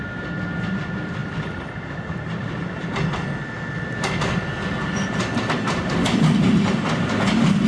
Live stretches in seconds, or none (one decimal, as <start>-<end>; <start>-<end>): 0.0-7.7